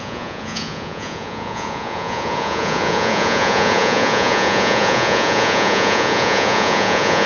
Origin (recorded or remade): remade